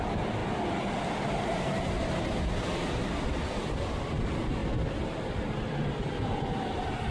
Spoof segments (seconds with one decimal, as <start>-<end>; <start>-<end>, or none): 0.4-2.2; 4.6-7.1